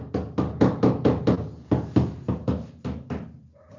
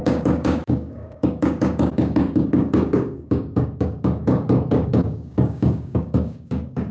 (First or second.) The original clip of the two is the first